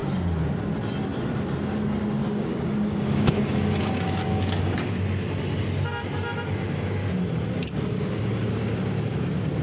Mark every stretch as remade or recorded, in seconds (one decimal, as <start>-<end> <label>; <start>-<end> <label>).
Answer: 0.0-2.2 recorded; 2.2-4.9 remade; 4.9-7.6 recorded; 7.6-8.2 remade; 8.2-9.6 recorded